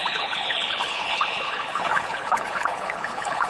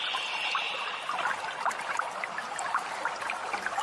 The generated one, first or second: first